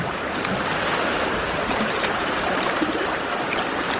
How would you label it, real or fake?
fake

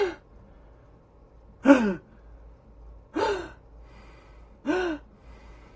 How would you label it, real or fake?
real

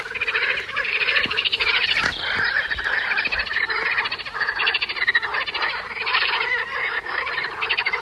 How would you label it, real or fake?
fake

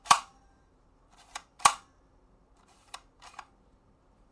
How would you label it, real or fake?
fake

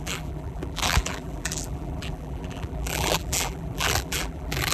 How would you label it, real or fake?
fake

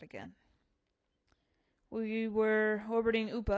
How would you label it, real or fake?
real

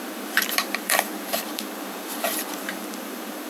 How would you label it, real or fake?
fake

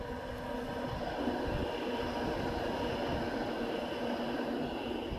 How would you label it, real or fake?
real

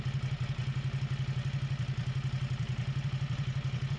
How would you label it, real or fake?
real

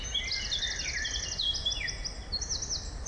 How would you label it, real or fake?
real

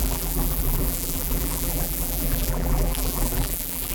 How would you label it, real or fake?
fake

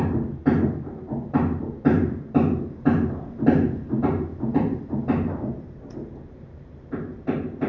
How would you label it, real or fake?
fake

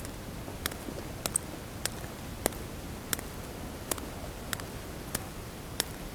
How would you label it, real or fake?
fake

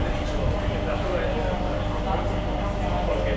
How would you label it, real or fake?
real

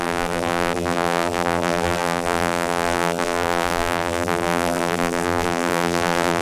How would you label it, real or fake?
fake